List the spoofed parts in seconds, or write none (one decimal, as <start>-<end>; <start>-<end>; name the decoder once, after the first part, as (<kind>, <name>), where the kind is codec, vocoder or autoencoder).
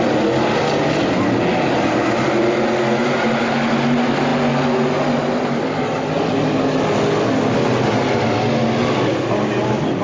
none